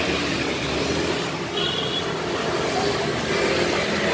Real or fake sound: real